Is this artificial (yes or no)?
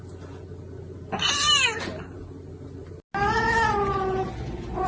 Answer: no